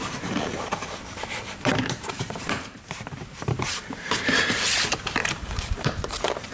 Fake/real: fake